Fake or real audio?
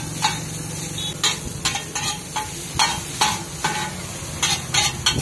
real